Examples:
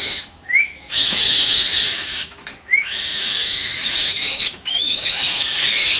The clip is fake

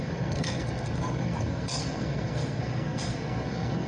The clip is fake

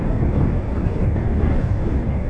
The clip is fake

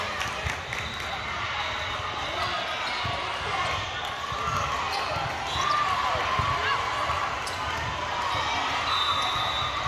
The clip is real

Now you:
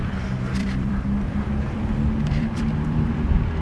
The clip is fake